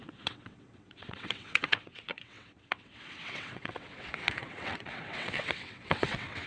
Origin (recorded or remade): remade